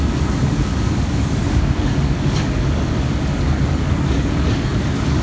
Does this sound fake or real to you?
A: fake